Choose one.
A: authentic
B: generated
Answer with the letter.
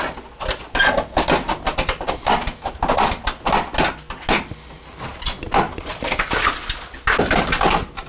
A